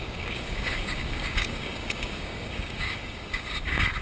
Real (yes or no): no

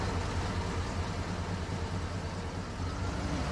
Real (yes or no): yes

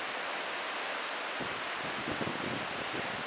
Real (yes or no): yes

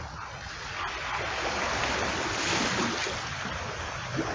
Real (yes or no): yes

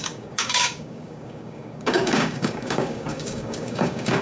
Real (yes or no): no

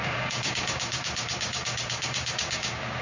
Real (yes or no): no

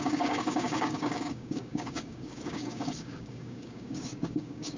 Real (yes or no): no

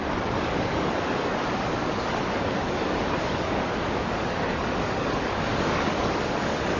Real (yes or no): no